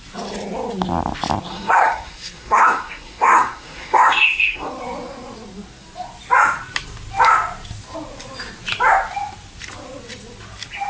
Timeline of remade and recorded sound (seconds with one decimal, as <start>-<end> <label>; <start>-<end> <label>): 0.0-1.5 recorded; 1.5-4.7 remade; 4.7-10.9 recorded